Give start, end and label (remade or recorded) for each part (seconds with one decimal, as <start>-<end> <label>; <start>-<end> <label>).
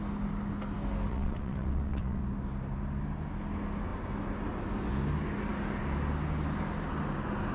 0.0-1.1 recorded; 1.1-2.2 remade; 2.2-7.5 recorded